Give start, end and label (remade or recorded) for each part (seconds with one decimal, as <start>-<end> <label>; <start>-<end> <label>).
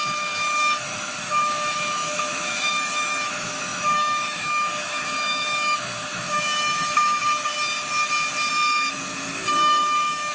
0.0-7.5 remade; 7.5-8.5 recorded; 8.5-10.3 remade